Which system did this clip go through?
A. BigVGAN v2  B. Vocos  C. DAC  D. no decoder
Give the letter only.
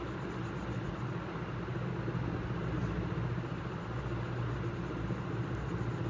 D